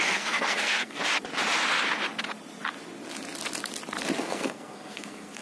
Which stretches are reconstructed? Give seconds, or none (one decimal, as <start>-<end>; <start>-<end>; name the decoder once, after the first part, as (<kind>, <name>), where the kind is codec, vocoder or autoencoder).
0.0-1.0 (codec, SNAC); 4.2-5.4